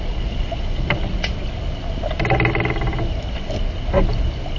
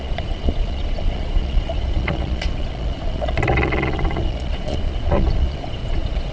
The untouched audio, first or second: first